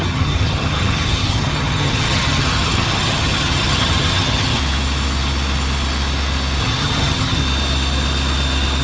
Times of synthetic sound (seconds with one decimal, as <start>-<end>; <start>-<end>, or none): 0.0-4.6; 6.6-7.4